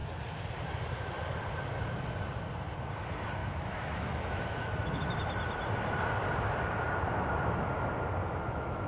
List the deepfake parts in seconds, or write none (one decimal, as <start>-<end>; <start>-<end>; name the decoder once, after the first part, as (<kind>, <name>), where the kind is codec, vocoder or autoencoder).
3.4-5.0 (autoencoder, DAC-VAE); 8.2-8.9

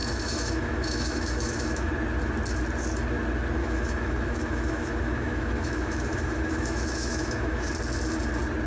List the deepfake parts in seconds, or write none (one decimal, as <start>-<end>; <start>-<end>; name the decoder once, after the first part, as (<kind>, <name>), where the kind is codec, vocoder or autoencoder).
0.0-1.9 (autoencoder, DAC-VAE); 3.6-7.7

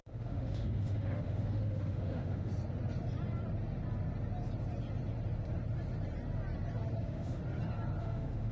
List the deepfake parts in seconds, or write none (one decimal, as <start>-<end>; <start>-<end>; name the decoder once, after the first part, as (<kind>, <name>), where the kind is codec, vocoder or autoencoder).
0.0-2.5 (autoencoder, DAC-VAE); 7.0-7.4; 8.0-8.5